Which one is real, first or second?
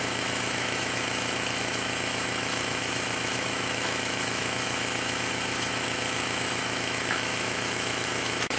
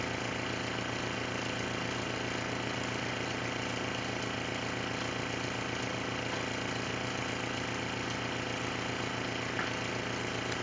second